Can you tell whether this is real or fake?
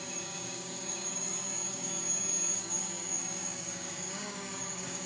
fake